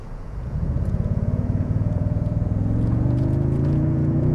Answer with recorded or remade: remade